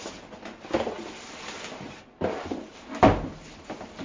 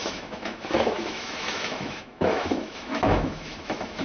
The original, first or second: first